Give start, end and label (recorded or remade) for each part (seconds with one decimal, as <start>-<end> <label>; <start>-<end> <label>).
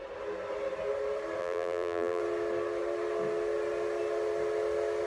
0.0-1.4 recorded; 1.4-2.2 remade; 2.2-5.1 recorded